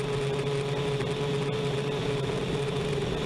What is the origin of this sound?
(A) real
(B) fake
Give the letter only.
A